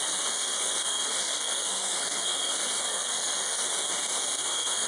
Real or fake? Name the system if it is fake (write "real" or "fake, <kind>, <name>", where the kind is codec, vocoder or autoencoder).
fake, codec, SNAC